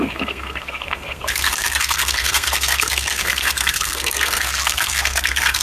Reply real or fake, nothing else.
fake